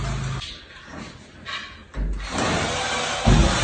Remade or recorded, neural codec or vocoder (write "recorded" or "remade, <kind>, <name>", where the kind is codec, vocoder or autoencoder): recorded